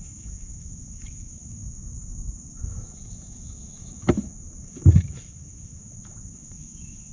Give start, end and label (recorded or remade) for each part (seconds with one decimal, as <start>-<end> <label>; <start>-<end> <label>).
0.0-7.1 remade